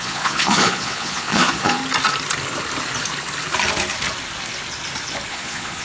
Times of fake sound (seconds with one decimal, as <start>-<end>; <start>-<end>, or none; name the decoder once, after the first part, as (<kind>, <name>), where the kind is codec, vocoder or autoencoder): 0.0-1.8 (vocoder, Vocos); 5.3-5.8

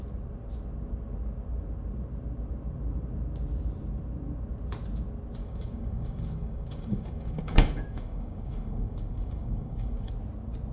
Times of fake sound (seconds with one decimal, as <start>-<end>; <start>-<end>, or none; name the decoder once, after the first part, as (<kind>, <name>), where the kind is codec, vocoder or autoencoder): 5.4-10.1 (codec, DAC)

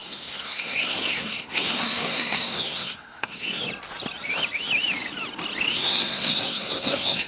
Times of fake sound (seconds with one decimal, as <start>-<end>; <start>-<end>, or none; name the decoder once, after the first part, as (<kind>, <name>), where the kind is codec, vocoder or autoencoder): 0.0-3.6 (codec, SNAC); 5.7-7.3

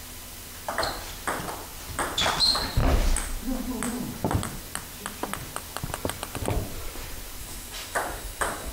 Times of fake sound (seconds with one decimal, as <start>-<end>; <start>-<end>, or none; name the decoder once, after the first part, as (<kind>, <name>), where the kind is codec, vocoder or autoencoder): 7.4-8.7 (codec, DAC)

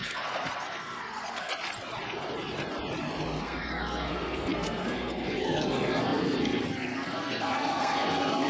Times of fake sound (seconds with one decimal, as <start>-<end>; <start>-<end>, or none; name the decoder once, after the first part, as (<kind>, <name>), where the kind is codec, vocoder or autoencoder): 0.0-1.5 (codec, SNAC); 3.4-8.5